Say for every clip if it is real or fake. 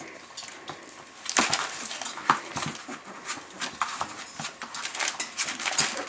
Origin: real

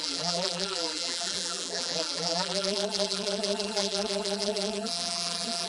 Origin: fake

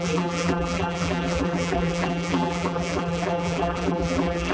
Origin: fake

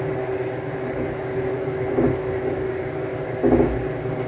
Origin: real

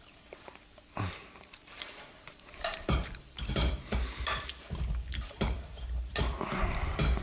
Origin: fake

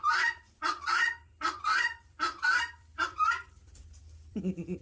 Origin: fake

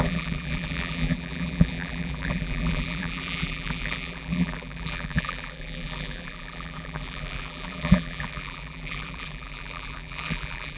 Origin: fake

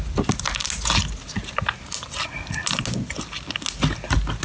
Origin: real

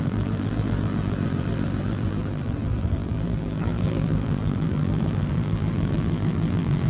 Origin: fake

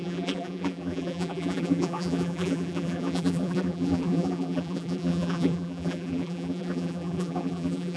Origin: fake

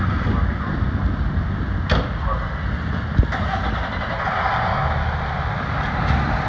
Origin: real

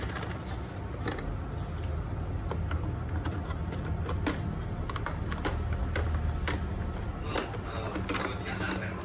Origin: real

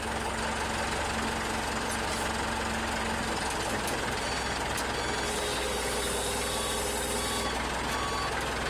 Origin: real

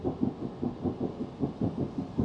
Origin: real